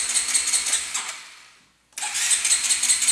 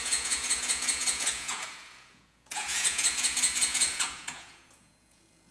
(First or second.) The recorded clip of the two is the first